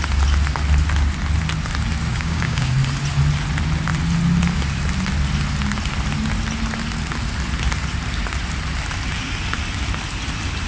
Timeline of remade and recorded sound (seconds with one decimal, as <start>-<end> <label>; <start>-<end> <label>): 0.0-2.1 recorded; 2.1-2.7 remade; 2.7-10.7 recorded